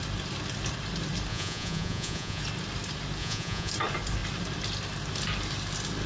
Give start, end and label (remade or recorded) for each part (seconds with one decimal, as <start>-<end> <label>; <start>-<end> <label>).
0.0-1.3 recorded; 1.3-2.4 remade; 2.4-3.2 recorded; 3.2-3.7 remade; 3.7-6.1 recorded

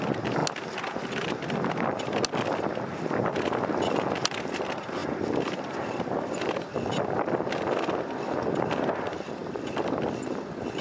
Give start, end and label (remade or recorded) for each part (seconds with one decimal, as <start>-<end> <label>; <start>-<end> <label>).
0.0-10.8 recorded

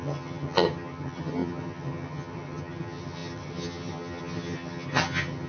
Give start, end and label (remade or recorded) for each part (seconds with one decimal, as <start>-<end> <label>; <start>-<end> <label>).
0.0-5.5 remade

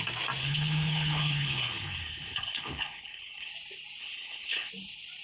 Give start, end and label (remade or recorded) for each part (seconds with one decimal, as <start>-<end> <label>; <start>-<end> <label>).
0.0-0.4 recorded; 0.4-3.5 remade; 3.5-4.0 recorded; 4.0-4.7 remade; 4.7-5.2 recorded

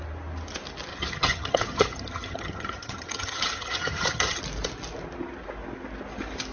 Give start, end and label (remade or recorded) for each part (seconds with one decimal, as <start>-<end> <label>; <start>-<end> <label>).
0.0-0.9 recorded; 0.9-4.4 remade; 4.4-6.5 recorded

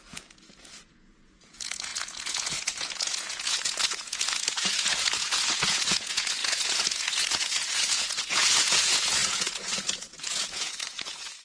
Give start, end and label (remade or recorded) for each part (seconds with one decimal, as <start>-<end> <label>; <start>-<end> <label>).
0.0-11.4 remade

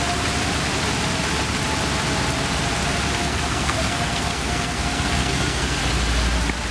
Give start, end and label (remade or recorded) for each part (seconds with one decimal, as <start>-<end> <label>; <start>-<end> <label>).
0.0-3.2 recorded; 3.2-5.8 remade; 5.8-6.7 recorded